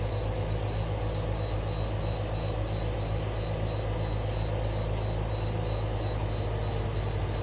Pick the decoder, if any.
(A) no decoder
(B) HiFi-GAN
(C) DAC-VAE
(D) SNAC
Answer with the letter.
A